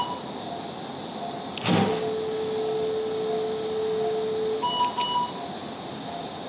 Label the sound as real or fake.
real